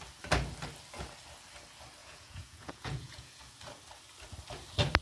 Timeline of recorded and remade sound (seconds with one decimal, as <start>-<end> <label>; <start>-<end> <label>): 0.0-2.0 recorded; 2.0-3.4 remade; 3.4-5.0 recorded

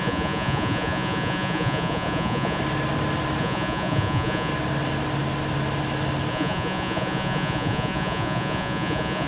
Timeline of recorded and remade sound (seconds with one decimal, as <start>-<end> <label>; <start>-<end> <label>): 0.0-2.6 remade; 2.6-3.4 recorded; 3.4-4.5 remade; 4.5-6.3 recorded; 6.3-9.3 remade

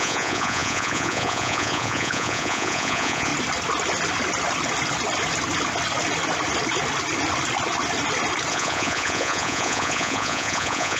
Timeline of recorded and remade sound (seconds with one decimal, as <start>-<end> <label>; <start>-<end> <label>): 0.0-3.3 remade; 3.3-8.5 recorded; 8.5-11.0 remade

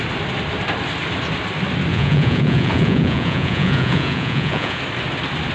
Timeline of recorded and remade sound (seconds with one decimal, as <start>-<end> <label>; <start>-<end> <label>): 0.0-1.9 recorded; 1.9-4.8 remade; 4.8-5.5 recorded

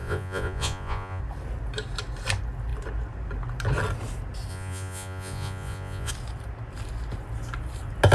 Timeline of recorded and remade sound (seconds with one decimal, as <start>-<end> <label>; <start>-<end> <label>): 0.0-1.2 remade; 1.2-4.5 recorded; 4.5-6.1 remade; 6.1-8.1 recorded